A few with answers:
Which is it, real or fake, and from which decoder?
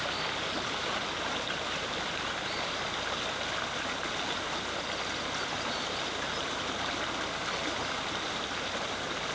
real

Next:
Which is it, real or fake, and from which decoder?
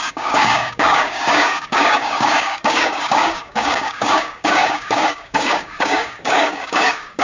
fake, codec, DAC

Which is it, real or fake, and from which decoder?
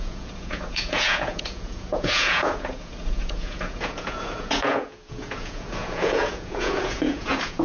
fake, vocoder, Vocos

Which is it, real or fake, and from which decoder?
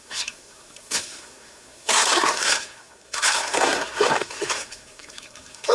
fake, codec, SNAC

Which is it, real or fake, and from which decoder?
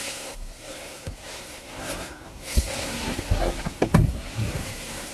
fake, codec, SNAC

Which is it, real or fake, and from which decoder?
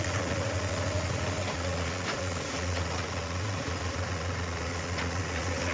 fake, vocoder, Vocos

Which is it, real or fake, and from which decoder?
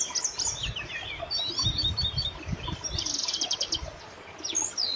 fake, vocoder, BigVGAN v2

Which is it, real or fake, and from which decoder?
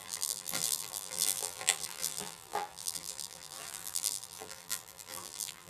fake, vocoder, BigVGAN v2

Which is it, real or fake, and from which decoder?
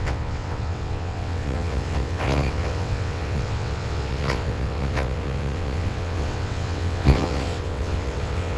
fake, vocoder, WaveNeXt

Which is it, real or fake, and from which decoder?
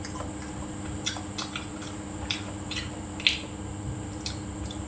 real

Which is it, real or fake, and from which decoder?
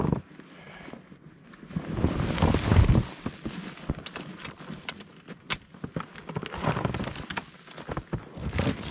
real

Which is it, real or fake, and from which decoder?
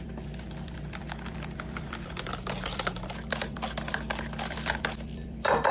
fake, vocoder, BigVGAN v2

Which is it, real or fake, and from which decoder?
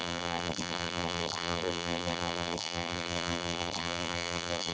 fake, vocoder, BigVGAN v2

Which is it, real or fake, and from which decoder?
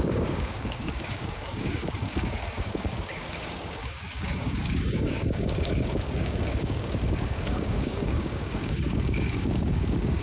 fake, codec, DAC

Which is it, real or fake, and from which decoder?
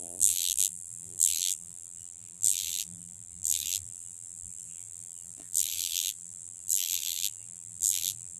fake, vocoder, BigVGAN v2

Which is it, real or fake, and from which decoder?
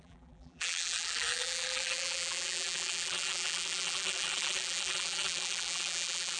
fake, vocoder, BigVGAN v2